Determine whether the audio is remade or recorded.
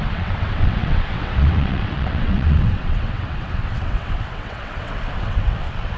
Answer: remade